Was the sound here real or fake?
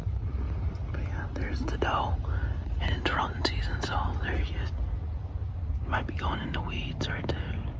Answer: real